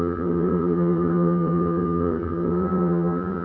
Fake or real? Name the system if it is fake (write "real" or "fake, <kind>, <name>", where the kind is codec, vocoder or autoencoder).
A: fake, vocoder, HiFi-GAN